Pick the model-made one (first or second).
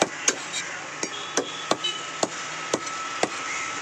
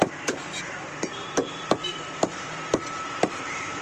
second